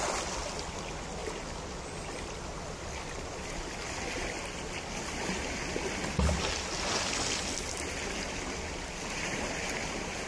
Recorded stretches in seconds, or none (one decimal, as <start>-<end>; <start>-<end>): 0.0-10.3